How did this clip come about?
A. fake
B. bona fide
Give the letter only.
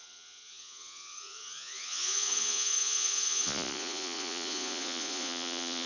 A